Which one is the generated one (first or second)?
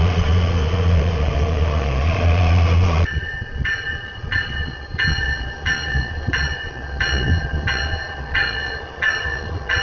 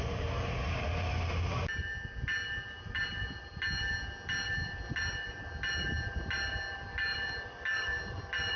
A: first